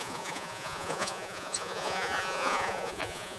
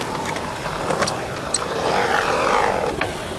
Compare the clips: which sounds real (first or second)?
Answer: second